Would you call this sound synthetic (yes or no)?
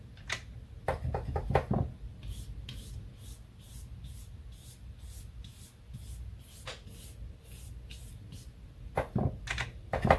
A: no